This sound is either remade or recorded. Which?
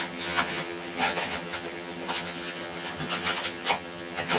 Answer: remade